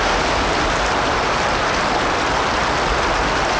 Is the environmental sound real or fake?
real